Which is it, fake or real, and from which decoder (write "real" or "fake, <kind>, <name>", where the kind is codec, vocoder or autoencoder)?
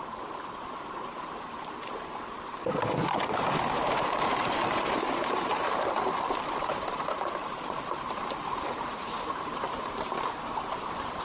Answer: fake, vocoder, BigVGAN v2